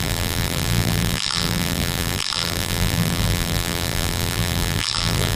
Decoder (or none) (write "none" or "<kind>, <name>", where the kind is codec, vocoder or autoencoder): vocoder, BigVGAN v2